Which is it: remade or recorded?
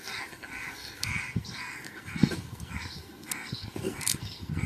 remade